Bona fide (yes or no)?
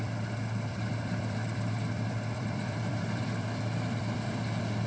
no